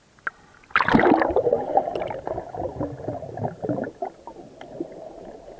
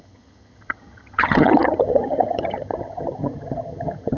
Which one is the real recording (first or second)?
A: first